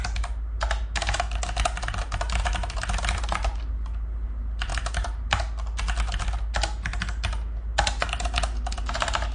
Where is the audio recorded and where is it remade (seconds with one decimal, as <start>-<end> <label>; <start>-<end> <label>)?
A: 0.0-9.3 recorded